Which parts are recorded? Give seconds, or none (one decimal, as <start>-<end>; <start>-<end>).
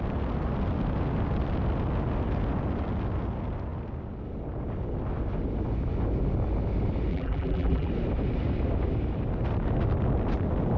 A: 0.0-7.1; 7.9-10.8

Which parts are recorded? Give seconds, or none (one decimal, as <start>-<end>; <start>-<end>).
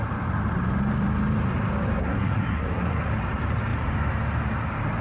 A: 0.0-2.0; 3.0-5.0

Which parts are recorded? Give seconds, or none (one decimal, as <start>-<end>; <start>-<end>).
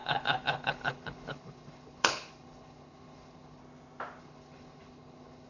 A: 3.6-4.2